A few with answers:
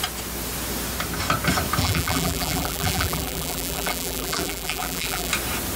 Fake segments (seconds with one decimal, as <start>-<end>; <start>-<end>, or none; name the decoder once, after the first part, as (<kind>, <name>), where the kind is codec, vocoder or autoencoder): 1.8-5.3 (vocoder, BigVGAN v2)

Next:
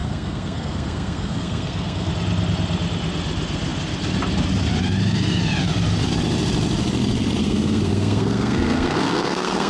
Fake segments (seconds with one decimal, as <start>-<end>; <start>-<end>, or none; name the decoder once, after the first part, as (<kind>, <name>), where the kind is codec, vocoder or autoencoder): 0.0-2.1 (codec, SNAC); 7.4-9.7

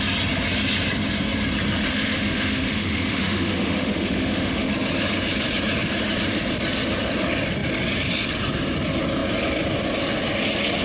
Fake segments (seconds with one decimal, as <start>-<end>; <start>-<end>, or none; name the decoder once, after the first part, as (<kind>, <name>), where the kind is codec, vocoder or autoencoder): 1.9-4.7 (autoencoder, DAC-VAE)

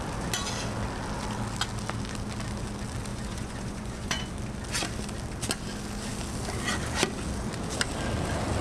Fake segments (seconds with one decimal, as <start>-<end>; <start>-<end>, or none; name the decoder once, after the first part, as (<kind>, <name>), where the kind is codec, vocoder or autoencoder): 3.1-4.3 (vocoder, Vocos)

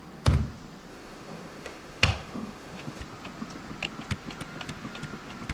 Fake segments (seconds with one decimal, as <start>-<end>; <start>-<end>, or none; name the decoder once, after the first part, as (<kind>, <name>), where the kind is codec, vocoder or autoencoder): 0.9-3.0 (autoencoder, DAC-VAE)

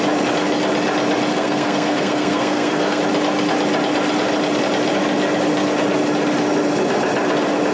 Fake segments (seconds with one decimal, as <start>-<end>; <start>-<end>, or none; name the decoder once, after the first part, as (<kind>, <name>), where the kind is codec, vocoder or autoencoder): 1.3-3.0 (codec, SNAC)